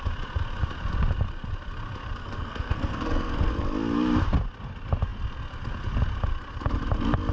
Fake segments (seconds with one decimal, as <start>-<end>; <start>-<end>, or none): 2.2-3.5